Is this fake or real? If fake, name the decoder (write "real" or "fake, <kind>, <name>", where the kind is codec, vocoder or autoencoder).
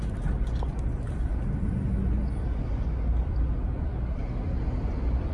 real